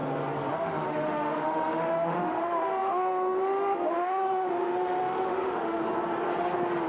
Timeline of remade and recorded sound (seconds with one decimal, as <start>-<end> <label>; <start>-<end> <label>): 0.0-0.5 recorded; 0.5-5.8 remade; 5.8-6.9 recorded